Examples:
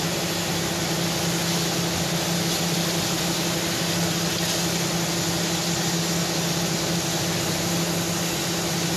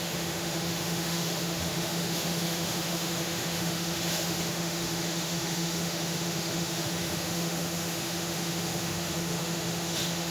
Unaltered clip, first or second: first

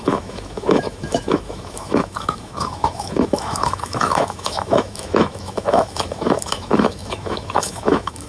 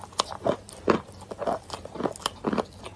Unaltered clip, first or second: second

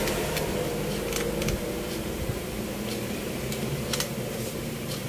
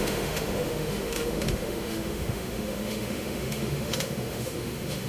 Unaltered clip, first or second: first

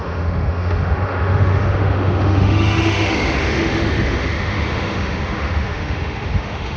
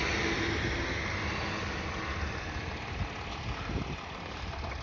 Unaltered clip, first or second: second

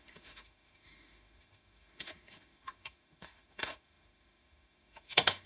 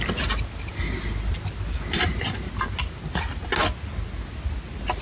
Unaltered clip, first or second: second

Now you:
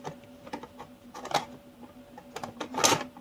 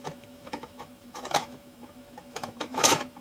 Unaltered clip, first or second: first